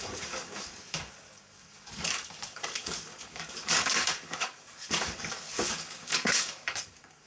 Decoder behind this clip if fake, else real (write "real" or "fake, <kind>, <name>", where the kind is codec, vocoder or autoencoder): fake, codec, DAC